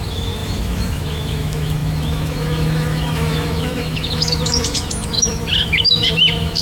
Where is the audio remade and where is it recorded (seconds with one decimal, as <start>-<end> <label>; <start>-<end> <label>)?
0.0-6.6 remade